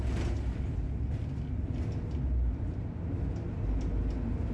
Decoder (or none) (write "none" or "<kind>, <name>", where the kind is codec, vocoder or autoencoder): none